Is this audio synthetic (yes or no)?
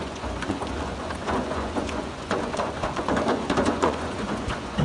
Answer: yes